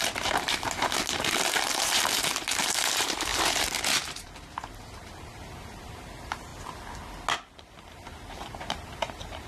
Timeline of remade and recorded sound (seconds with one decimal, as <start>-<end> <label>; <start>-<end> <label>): 0.0-6.5 remade; 6.5-7.7 recorded; 7.7-9.5 remade